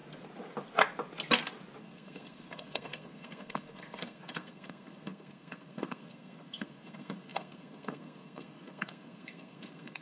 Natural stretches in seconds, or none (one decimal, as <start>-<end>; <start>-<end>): 0.0-1.8